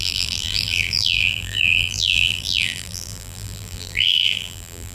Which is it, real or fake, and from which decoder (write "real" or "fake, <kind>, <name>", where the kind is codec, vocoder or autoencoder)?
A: fake, vocoder, BigVGAN v2